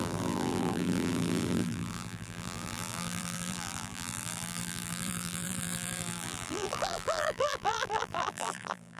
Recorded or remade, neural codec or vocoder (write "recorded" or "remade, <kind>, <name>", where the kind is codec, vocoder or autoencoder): remade, vocoder, BigVGAN v2